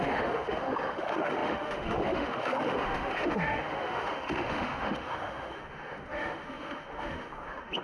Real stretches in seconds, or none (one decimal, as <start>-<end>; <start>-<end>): none